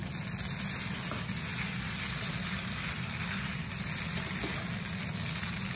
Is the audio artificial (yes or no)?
no